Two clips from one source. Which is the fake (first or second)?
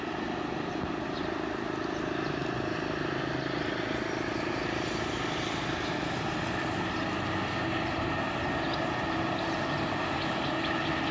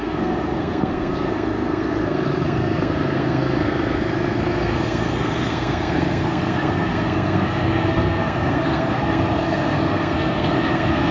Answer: second